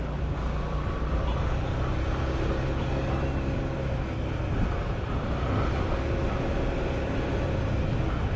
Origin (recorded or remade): recorded